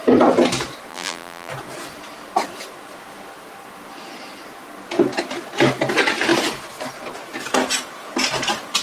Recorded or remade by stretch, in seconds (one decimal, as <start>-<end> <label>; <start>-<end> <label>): 0.0-0.9 recorded; 0.9-1.5 remade; 1.5-8.8 recorded

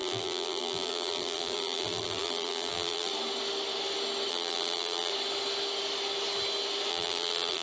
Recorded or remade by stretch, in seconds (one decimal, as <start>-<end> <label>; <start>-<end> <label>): 0.0-3.1 remade; 3.1-4.3 recorded; 4.3-5.1 remade; 5.1-6.9 recorded; 6.9-7.6 remade

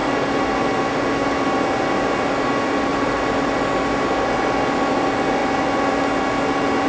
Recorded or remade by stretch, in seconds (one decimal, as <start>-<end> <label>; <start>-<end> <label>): 0.0-2.9 recorded; 2.9-3.5 remade; 3.5-6.9 recorded